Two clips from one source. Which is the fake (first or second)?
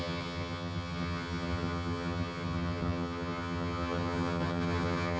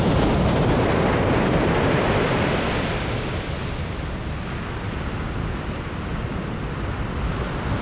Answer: first